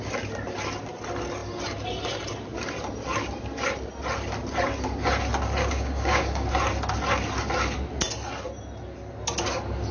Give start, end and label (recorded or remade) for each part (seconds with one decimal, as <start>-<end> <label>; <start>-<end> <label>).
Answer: 0.0-5.6 recorded; 5.6-6.5 remade; 6.5-9.9 recorded